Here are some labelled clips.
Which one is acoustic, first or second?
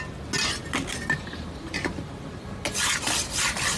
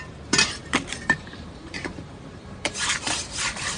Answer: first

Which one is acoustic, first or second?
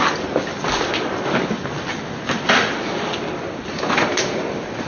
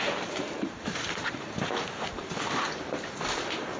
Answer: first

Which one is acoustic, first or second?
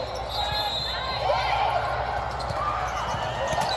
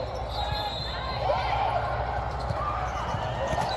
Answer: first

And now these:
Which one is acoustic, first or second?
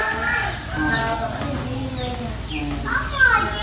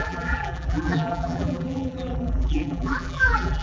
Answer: first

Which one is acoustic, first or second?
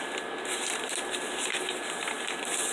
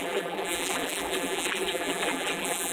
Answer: first